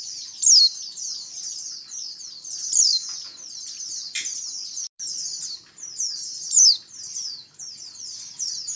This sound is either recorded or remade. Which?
recorded